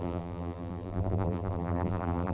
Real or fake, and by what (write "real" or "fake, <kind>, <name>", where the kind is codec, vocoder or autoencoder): fake, vocoder, BigVGAN v2